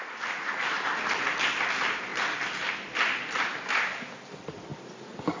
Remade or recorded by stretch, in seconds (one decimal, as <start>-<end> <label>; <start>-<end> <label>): 0.0-5.4 recorded